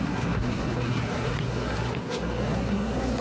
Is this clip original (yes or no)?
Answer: no